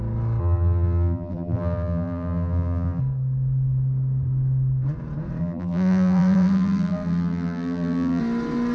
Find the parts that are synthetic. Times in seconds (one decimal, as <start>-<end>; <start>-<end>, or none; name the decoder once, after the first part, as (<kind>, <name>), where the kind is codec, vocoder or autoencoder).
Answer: 0.4-3.0 (vocoder, BigVGAN v2); 5.4-8.2